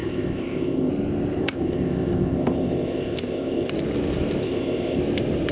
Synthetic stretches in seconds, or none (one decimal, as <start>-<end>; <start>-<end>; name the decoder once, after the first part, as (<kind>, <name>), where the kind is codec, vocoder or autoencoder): 0.0-0.9 (codec, ZipCodec); 1.4-3.7; 4.4-5.0